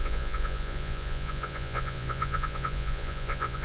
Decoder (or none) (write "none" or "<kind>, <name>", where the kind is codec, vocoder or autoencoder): vocoder, Vocos